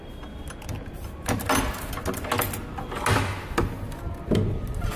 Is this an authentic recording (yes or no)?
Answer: yes